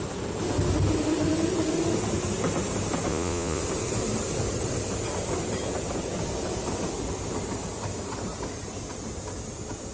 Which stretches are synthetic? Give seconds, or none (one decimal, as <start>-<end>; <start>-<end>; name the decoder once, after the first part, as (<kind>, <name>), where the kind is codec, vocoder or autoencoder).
3.1-3.6 (vocoder, Vocos)